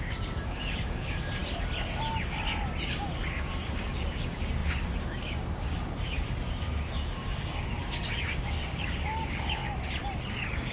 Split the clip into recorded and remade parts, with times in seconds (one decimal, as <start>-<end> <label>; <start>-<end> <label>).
0.0-1.4 remade; 1.4-2.8 recorded; 2.8-9.6 remade; 9.6-10.2 recorded; 10.2-10.7 remade